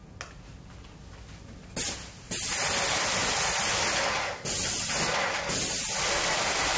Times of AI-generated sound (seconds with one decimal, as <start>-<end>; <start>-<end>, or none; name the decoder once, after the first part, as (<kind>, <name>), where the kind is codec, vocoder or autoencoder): none